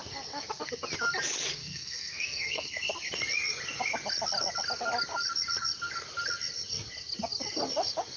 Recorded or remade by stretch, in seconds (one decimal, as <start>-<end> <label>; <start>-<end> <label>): 0.0-1.6 recorded; 1.6-2.9 remade; 2.9-8.2 recorded